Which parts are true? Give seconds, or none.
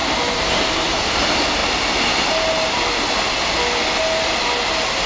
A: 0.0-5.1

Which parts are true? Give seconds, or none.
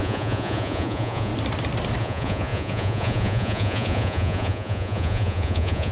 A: 1.3-2.0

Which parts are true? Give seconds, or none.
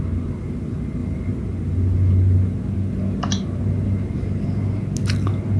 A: 0.0-5.6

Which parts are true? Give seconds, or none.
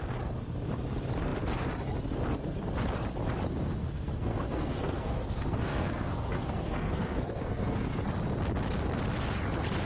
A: 0.0-3.8; 8.0-9.9